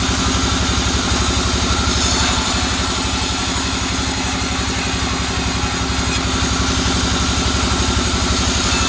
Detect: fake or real real